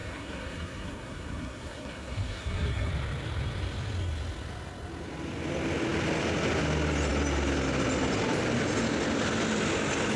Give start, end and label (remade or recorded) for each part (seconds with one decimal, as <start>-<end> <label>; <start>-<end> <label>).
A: 0.0-2.9 remade; 2.9-10.2 recorded